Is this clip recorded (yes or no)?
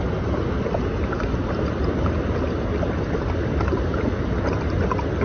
yes